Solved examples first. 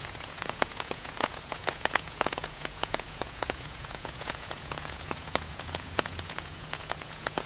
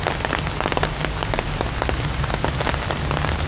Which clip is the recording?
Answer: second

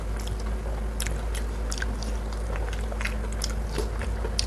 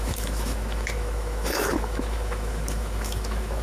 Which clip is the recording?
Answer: first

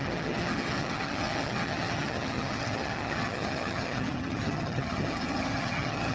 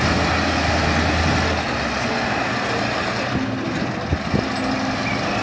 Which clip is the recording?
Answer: second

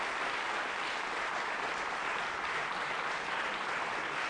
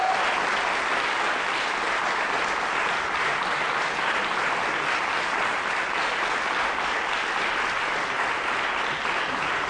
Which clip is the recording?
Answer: second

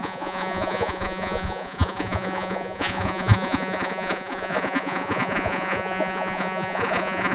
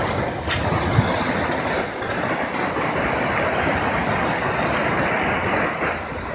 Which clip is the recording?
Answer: second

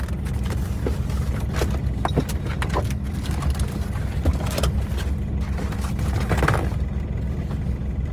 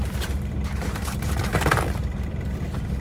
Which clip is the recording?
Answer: first